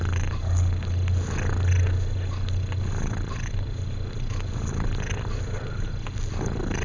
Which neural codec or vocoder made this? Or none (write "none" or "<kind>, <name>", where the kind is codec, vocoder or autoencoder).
none